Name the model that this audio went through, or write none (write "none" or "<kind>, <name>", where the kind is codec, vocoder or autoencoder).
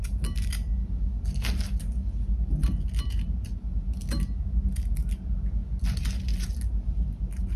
none